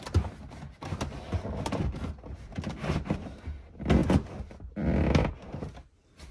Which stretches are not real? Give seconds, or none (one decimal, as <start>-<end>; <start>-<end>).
none